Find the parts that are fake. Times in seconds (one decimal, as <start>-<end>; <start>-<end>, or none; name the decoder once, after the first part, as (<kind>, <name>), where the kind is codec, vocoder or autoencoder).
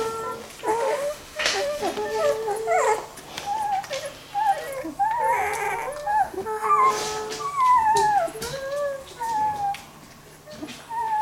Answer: 0.7-1.8 (autoencoder, DAC-VAE); 6.1-6.7